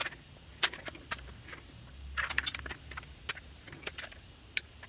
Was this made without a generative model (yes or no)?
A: yes